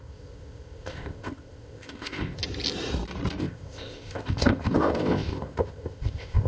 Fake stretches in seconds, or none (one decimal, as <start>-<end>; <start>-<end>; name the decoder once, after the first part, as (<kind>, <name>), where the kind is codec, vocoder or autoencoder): 0.0-2.4 (codec, ZipCodec); 3.4-6.5